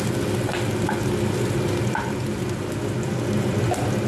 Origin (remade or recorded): recorded